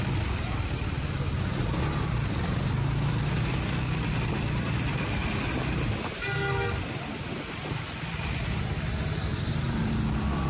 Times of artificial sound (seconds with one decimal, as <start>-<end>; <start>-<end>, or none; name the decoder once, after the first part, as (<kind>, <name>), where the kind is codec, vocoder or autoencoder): 0.0-5.2 (vocoder, BigVGAN v2); 7.5-10.5